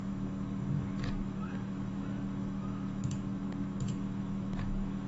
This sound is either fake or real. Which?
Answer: fake